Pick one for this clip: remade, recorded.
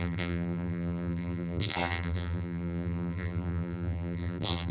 remade